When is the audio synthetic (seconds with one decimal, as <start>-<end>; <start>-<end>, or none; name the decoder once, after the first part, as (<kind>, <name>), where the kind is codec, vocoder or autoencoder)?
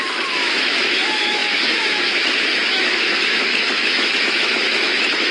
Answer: 0.0-5.3 (autoencoder, DAC-VAE)